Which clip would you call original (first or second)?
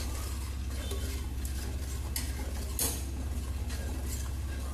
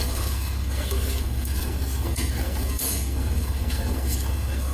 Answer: first